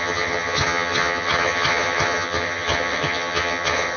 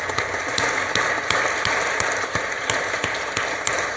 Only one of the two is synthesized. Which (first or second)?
first